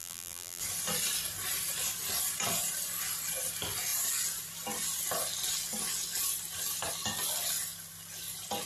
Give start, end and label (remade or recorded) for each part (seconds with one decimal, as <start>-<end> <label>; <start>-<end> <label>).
0.0-0.6 remade; 0.6-8.7 recorded